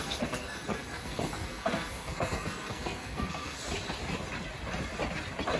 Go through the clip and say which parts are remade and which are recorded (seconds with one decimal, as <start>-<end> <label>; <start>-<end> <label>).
0.0-3.6 remade; 3.6-5.6 recorded